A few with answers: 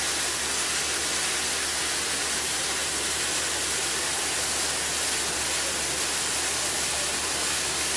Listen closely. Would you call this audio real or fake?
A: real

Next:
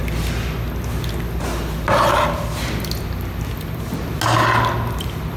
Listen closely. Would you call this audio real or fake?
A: real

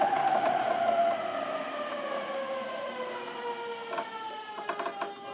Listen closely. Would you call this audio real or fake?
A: real